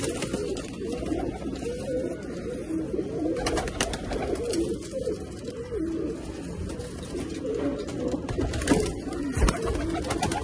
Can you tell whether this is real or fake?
real